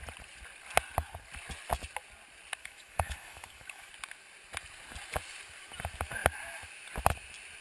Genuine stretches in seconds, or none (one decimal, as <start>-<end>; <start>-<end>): 0.0-2.6; 3.9-7.6